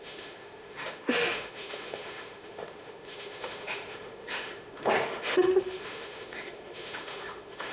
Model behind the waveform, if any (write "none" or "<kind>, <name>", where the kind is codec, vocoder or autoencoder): autoencoder, DAC-VAE